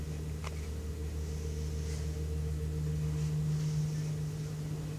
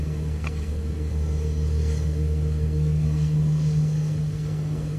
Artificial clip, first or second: second